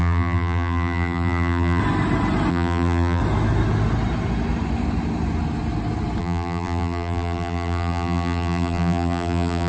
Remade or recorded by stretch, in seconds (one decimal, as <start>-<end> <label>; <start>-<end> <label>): 0.0-1.8 remade; 1.8-2.5 recorded; 2.5-3.2 remade; 3.2-6.2 recorded; 6.2-9.7 remade